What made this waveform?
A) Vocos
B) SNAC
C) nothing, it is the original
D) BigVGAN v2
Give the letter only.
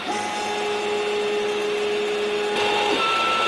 C